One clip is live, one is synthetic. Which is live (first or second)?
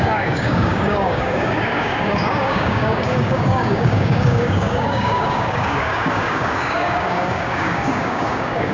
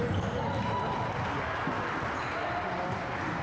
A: second